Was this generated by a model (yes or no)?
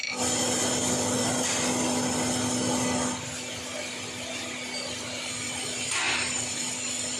no